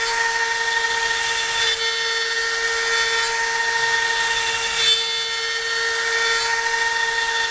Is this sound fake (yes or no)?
no